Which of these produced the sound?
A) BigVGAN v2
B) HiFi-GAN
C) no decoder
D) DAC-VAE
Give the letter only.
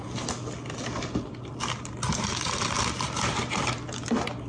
C